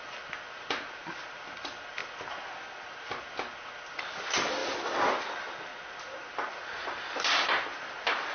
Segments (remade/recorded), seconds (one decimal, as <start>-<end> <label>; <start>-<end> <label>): 0.0-8.3 recorded